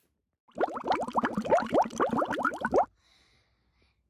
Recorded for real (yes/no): yes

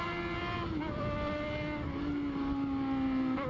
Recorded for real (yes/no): yes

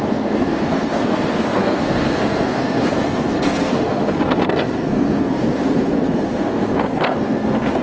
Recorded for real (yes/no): no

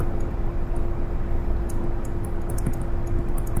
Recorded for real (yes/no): yes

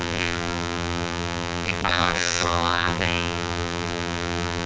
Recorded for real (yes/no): no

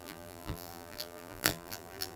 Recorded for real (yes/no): no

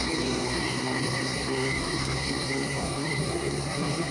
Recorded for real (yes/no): no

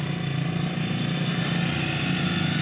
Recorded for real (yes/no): yes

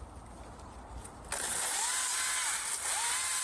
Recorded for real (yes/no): yes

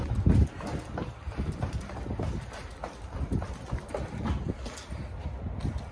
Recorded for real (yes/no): yes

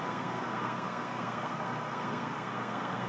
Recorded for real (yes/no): no